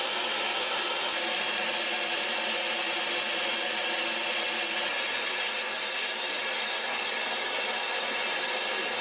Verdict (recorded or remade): recorded